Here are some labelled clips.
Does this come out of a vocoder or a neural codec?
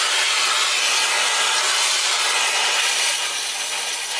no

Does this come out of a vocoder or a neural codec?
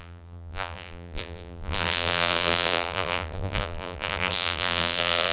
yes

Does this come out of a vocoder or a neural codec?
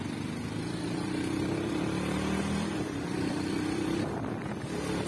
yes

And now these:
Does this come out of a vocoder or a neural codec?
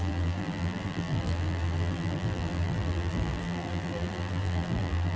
yes